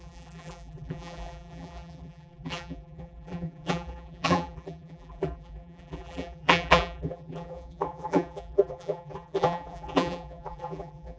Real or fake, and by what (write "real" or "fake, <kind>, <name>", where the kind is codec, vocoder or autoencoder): fake, vocoder, BigVGAN v2